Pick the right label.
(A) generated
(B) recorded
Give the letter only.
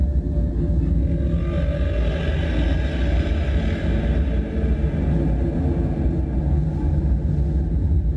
B